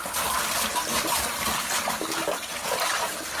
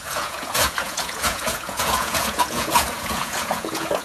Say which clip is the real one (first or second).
first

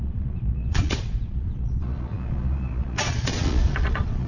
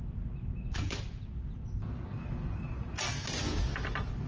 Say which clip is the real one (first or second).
second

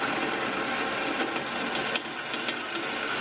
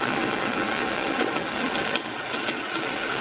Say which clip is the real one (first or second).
first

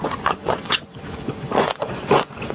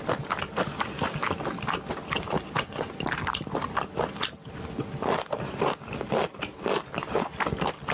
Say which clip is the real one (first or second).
second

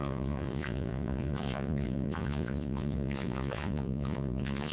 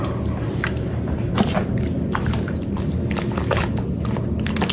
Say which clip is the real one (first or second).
second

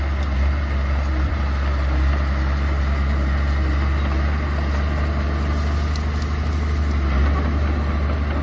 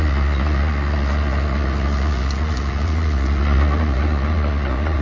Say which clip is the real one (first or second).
first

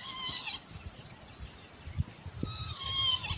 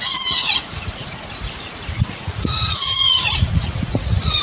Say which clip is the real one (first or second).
first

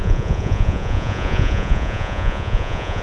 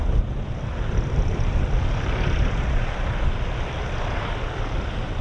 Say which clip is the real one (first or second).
second